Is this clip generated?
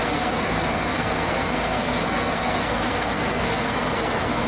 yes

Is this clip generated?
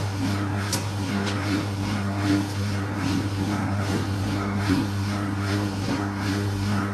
yes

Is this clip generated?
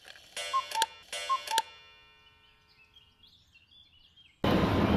no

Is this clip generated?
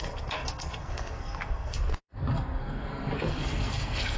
yes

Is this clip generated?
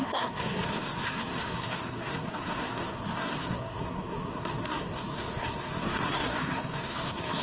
yes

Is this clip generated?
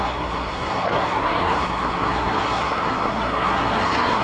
yes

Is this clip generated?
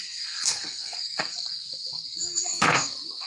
yes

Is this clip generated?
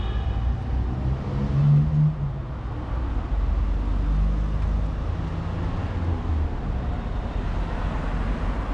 no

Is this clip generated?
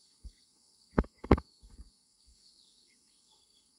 yes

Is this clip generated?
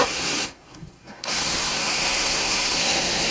yes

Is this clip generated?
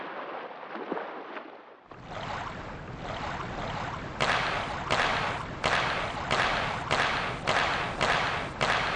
no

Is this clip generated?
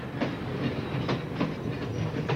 no